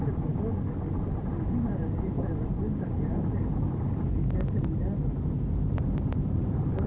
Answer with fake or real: fake